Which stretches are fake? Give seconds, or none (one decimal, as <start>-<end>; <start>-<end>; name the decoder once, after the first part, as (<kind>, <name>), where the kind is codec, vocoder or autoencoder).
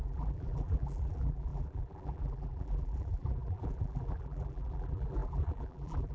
0.0-6.1 (vocoder, BigVGAN v2)